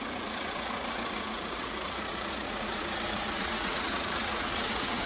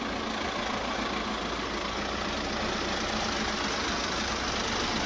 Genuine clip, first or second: second